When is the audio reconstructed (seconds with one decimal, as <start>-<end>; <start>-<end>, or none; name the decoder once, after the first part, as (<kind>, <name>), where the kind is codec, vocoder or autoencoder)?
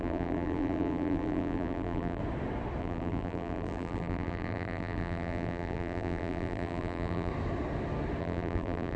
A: 0.0-2.2 (vocoder, BigVGAN v2); 2.8-7.3; 8.2-9.0